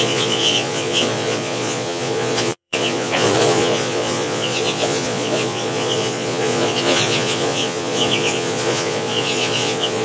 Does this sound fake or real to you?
fake